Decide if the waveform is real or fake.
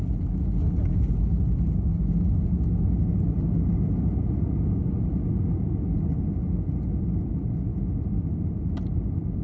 real